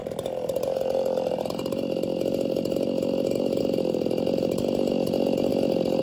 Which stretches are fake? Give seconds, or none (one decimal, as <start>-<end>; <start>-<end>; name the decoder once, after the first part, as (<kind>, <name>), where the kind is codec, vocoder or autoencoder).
none